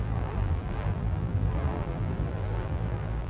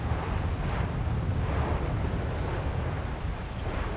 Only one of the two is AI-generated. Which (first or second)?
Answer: first